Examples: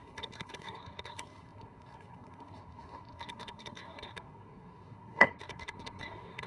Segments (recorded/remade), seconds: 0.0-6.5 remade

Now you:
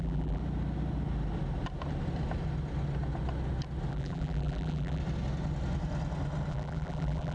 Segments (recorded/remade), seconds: 0.0-0.4 remade; 0.4-3.9 recorded; 3.9-5.0 remade; 5.0-6.5 recorded; 6.5-7.3 remade

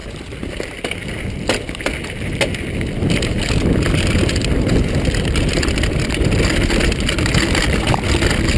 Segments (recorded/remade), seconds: 0.0-8.6 recorded

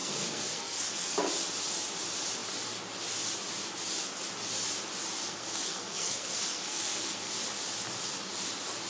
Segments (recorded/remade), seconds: 0.0-1.3 remade; 1.3-5.2 recorded; 5.2-7.3 remade; 7.3-8.9 recorded